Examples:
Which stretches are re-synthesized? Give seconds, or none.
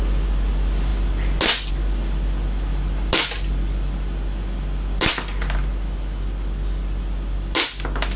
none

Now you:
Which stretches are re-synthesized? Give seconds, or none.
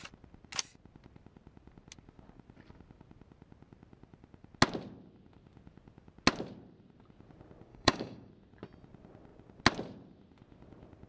7.7-8.3 (codec, DAC)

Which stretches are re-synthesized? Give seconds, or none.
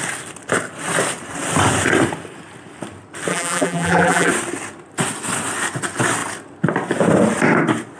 3.3-4.3 (vocoder, BigVGAN v2)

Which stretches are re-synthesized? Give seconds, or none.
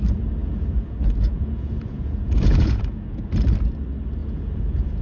0.4-3.4 (vocoder, Vocos); 4.2-5.0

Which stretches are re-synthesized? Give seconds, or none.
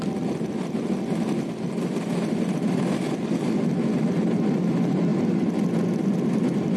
none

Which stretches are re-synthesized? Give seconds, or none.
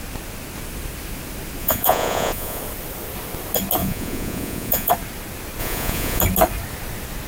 1.6-2.6 (vocoder, Vocos); 3.8-4.9; 5.6-6.2